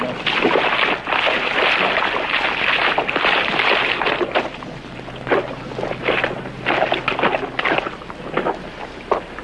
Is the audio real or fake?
real